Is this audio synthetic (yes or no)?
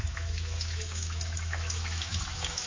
yes